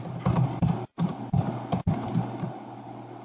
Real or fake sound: real